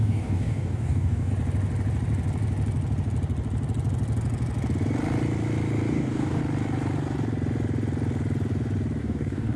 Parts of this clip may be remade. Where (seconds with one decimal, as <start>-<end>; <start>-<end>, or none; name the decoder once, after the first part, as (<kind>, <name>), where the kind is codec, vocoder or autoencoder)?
0.0-1.3 (codec, DAC); 5.9-6.4; 9.0-9.6